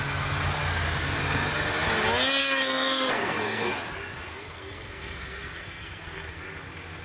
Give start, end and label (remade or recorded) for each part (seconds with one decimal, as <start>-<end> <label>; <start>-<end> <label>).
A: 0.0-2.4 recorded; 2.4-3.7 remade; 3.7-4.3 recorded; 4.3-6.4 remade; 6.4-7.0 recorded